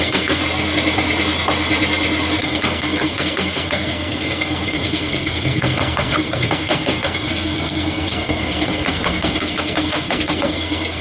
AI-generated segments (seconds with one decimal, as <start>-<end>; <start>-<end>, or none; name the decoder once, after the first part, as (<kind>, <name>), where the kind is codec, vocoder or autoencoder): 0.0-0.4 (codec, SNAC); 2.4-11.0